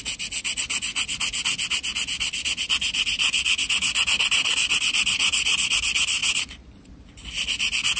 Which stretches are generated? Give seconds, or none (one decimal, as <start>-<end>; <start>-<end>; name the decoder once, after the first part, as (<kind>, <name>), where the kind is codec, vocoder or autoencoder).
none